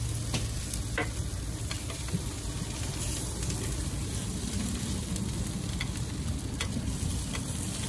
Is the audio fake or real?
real